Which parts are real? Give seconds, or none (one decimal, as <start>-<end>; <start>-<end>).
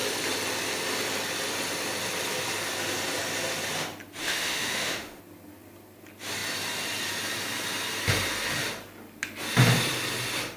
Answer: 0.0-4.2; 5.2-10.6